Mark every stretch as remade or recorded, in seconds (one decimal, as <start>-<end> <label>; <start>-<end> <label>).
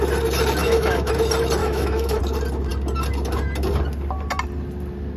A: 0.0-0.6 recorded; 0.6-1.1 remade; 1.1-1.6 recorded; 1.6-2.2 remade; 2.2-5.2 recorded